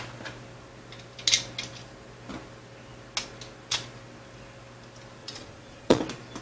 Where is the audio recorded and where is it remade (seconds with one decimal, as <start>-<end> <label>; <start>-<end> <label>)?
0.0-5.2 recorded; 5.2-6.0 remade; 6.0-6.4 recorded